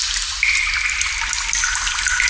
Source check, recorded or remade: recorded